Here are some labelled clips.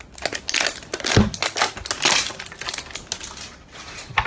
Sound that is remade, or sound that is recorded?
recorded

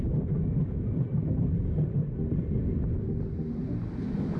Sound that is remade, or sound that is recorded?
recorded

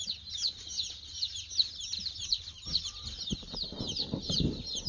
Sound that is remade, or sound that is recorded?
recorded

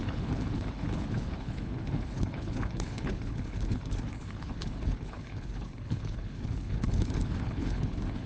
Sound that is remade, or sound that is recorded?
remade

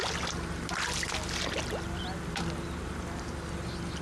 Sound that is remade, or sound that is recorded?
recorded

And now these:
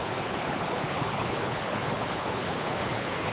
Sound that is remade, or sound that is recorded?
remade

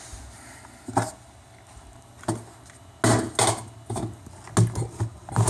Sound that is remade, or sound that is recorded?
recorded